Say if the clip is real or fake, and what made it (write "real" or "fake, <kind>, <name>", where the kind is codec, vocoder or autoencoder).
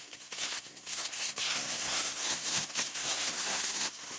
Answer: fake, codec, SNAC